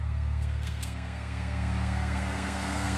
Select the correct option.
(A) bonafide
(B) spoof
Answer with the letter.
B